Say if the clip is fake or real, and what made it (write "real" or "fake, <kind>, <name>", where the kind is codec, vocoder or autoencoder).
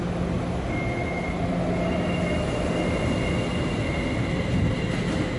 real